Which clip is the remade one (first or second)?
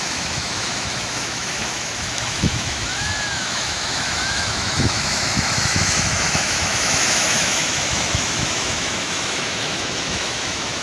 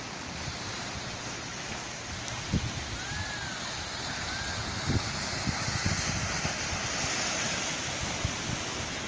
first